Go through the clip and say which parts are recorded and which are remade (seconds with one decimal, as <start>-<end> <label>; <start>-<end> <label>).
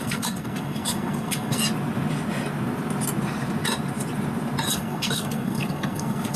0.0-1.6 remade; 1.6-4.7 recorded; 4.7-6.4 remade